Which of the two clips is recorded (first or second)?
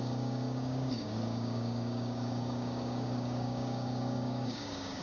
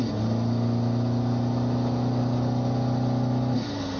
second